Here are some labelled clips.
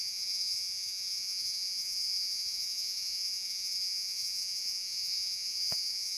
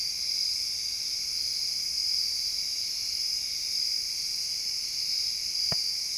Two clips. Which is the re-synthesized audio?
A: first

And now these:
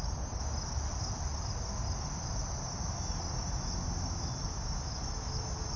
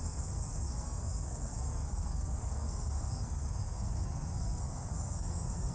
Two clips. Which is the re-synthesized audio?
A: second